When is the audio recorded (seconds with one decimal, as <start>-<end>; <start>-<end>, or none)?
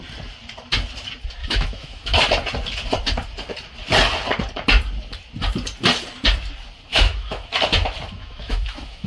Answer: 0.0-1.4; 2.2-6.9; 7.5-8.2